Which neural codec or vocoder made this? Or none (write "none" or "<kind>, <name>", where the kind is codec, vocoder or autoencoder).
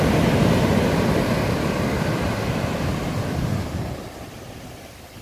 none